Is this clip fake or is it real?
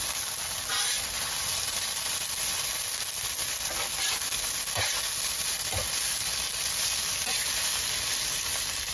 real